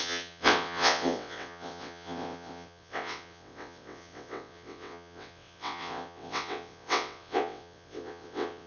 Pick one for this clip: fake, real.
fake